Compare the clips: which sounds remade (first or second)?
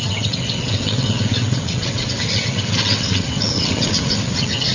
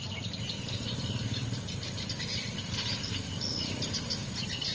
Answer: first